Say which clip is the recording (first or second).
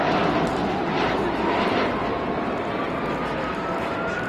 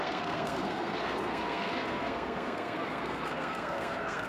first